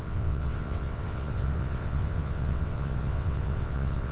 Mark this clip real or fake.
fake